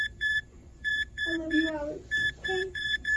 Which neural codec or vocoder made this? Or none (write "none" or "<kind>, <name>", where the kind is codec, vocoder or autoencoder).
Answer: vocoder, Vocos